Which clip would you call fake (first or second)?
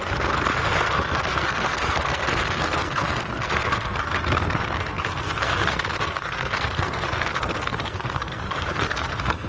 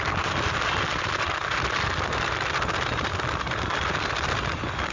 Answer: first